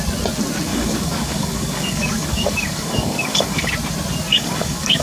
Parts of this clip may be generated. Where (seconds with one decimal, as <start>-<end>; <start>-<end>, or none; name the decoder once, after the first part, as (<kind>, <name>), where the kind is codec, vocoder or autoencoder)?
0.7-3.7 (codec, DAC); 4.3-5.0